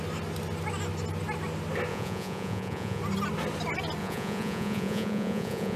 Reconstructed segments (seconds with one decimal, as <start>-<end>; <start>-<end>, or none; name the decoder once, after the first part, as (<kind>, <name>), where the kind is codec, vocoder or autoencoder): 1.9-3.0 (vocoder, Vocos); 4.0-5.8